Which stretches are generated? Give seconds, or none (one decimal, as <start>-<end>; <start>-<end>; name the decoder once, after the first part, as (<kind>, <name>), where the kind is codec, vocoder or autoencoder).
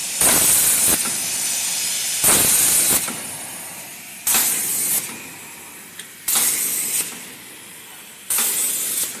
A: none